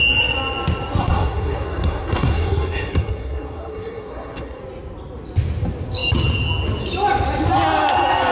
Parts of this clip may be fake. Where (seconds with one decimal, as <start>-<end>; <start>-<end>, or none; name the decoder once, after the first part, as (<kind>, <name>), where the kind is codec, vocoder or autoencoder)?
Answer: 1.0-4.6 (codec, SNAC)